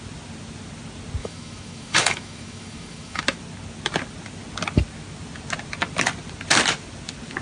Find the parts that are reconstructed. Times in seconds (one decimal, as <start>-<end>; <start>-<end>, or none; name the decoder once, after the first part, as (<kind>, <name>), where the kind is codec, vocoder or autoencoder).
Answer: 1.2-3.2 (autoencoder, DAC-VAE)